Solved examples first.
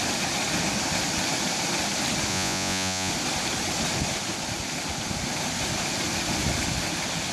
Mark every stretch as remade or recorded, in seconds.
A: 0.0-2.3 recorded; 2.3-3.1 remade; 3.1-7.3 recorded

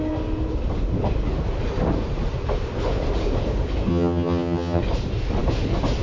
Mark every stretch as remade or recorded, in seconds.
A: 0.0-3.9 recorded; 3.9-4.8 remade; 4.8-6.0 recorded

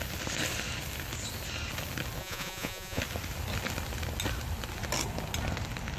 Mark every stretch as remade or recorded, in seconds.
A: 0.0-2.2 recorded; 2.2-3.0 remade; 3.0-6.0 recorded

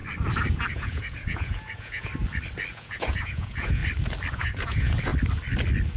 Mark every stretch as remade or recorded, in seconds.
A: 0.0-0.7 recorded; 0.7-2.1 remade; 2.1-2.7 recorded; 2.7-3.8 remade; 3.8-4.3 recorded; 4.3-5.1 remade; 5.1-6.0 recorded